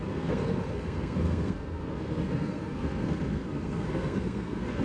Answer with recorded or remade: remade